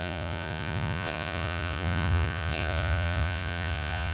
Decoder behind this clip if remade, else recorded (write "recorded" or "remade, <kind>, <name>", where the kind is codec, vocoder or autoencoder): remade, vocoder, Vocos